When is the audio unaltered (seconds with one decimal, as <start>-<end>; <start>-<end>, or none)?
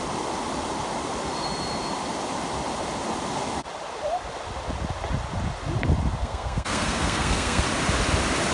0.0-6.2; 7.6-8.5